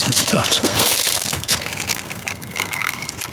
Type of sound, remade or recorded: remade